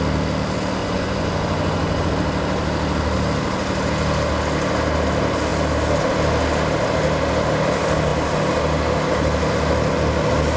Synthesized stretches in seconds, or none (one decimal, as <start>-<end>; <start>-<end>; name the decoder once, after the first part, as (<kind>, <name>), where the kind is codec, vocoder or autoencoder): 0.8-2.1 (vocoder, Vocos)

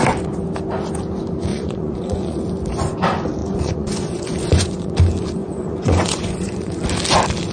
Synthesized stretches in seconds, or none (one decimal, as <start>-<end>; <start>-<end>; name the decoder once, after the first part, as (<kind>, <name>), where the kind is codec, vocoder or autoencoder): 1.5-2.4 (vocoder, Vocos); 3.4-4.9; 5.4-6.8

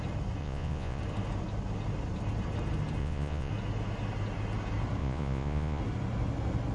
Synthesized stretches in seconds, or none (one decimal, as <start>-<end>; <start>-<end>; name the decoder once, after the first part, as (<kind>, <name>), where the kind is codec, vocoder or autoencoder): 0.4-1.0 (vocoder, Vocos); 3.0-3.5; 5.0-5.8

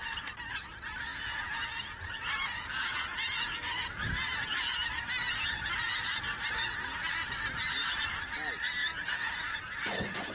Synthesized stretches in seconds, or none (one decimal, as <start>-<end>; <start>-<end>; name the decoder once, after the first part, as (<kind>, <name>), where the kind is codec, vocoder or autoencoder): 1.1-4.7 (vocoder, Vocos); 8.8-10.3

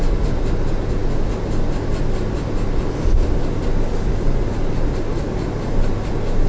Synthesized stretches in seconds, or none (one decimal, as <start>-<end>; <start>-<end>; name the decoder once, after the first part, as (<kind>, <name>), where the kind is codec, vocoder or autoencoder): none

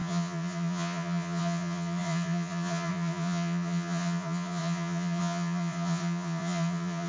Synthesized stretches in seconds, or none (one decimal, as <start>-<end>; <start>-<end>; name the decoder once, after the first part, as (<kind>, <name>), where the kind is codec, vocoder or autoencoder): 0.0-7.1 (vocoder, Vocos)

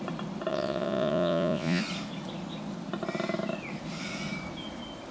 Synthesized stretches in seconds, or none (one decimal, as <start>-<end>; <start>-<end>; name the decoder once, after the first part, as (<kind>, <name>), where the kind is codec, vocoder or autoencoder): 0.5-1.8 (vocoder, Vocos)

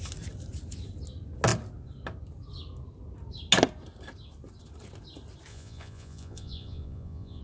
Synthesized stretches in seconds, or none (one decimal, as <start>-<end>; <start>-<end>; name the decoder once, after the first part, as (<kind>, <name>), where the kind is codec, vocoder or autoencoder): 5.5-7.4 (vocoder, Vocos)